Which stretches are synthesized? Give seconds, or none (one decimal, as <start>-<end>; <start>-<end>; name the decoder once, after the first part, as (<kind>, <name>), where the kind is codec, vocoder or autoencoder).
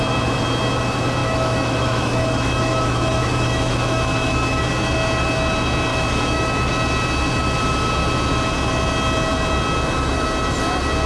1.2-4.6 (autoencoder, DAC-VAE); 5.9-6.7